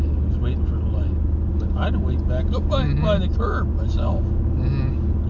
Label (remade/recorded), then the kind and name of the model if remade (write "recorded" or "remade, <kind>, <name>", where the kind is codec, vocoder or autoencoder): recorded